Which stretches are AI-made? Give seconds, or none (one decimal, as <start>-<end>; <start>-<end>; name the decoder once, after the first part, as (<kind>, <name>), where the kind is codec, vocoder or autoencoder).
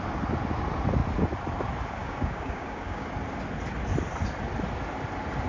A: 2.0-3.1 (codec, DAC)